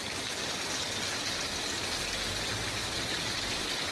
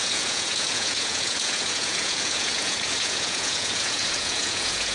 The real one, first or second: first